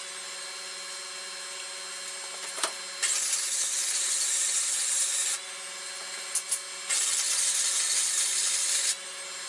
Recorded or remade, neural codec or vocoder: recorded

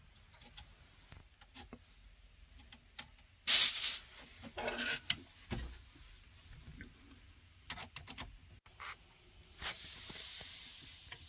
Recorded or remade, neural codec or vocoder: recorded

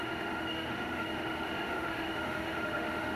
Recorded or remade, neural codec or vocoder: remade, autoencoder, DAC-VAE